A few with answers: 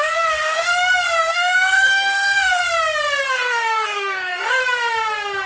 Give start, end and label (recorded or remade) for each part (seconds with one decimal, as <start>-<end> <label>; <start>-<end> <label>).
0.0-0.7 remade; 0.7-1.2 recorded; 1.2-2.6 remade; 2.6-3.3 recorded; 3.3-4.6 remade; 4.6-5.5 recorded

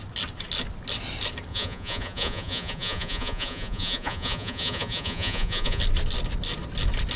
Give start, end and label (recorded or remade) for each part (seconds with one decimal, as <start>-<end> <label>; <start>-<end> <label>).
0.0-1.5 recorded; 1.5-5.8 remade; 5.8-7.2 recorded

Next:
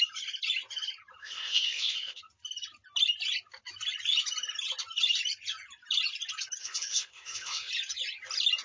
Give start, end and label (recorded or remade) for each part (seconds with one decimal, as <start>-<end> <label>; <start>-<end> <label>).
0.0-1.2 recorded; 1.2-2.2 remade; 2.2-6.6 recorded; 6.6-7.7 remade; 7.7-8.6 recorded

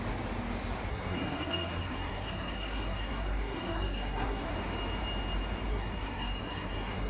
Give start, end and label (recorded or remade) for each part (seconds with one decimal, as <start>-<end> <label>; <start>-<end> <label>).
0.0-0.9 recorded; 0.9-4.5 remade; 4.5-5.7 recorded; 5.7-7.1 remade

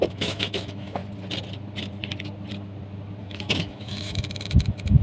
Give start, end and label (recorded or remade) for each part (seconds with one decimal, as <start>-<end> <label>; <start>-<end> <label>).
0.0-1.0 remade; 1.0-3.2 recorded; 3.2-5.0 remade

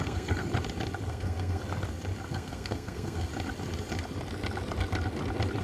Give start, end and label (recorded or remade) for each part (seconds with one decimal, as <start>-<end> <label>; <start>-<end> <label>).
0.0-0.5 remade; 0.5-1.1 recorded; 1.1-1.6 remade; 1.6-2.3 recorded; 2.3-3.3 remade; 3.3-5.6 recorded